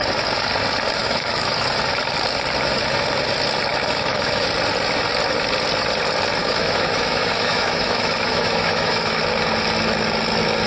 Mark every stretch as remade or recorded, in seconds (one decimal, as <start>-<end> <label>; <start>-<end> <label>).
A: 0.0-1.0 recorded; 1.0-1.5 remade; 1.5-3.7 recorded; 3.7-4.5 remade; 4.5-6.4 recorded; 6.4-9.2 remade; 9.2-10.7 recorded